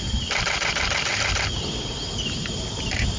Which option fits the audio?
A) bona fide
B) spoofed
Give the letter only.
A